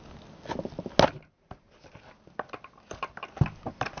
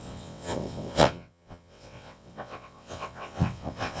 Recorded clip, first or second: first